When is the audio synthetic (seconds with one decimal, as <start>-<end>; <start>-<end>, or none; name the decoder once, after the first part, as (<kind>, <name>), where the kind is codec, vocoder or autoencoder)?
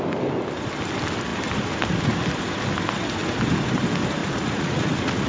4.2-5.3 (vocoder, Vocos)